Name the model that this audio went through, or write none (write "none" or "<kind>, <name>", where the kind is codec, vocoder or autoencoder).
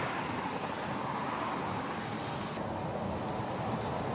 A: none